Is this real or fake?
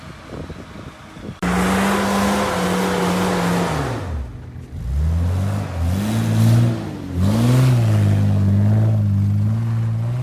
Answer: real